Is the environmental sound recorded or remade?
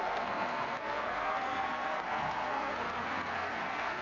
remade